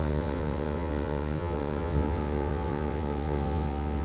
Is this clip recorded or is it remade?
remade